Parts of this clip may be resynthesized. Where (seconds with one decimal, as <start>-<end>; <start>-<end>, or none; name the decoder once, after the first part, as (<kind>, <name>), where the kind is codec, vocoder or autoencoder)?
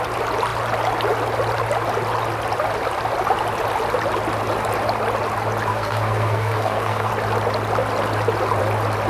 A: 5.7-7.1 (codec, SNAC)